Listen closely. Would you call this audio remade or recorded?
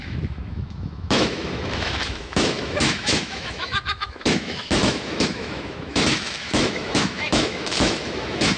remade